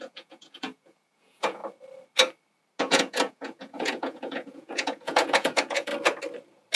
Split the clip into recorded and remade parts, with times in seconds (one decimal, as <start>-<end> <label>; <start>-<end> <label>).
0.0-1.6 remade; 1.6-2.8 recorded; 2.8-5.9 remade; 5.9-6.8 recorded